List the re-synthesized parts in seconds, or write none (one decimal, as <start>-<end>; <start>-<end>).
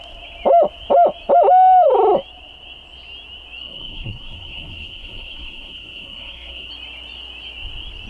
3.6-6.7